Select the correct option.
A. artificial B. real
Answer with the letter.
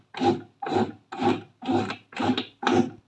B